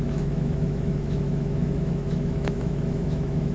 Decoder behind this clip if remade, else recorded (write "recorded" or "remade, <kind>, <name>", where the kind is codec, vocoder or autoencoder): remade, autoencoder, DAC-VAE